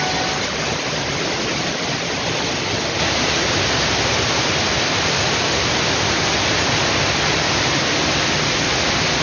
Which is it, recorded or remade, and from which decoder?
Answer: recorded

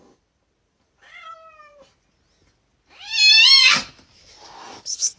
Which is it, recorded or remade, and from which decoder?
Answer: recorded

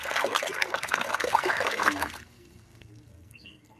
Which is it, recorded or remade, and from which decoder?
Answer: remade, codec, SNAC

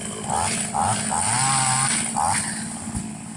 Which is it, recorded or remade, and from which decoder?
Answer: recorded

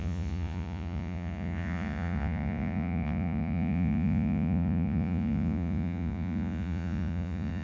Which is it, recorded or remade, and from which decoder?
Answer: remade, vocoder, Vocos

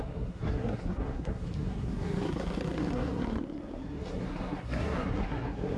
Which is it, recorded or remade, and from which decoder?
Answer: remade, codec, SNAC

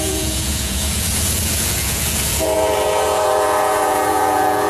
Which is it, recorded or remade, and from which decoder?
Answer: remade, vocoder, Vocos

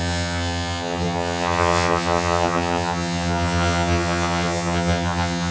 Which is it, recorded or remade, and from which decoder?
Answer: remade, vocoder, HiFi-GAN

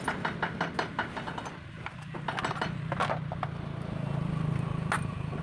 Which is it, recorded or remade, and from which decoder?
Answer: recorded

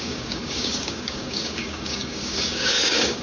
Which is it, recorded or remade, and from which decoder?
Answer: remade, codec, DAC